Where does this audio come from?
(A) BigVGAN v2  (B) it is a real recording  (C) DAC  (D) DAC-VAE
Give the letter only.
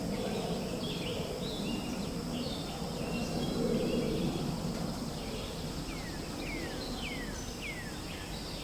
B